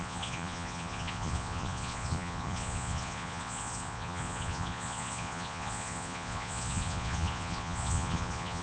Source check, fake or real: fake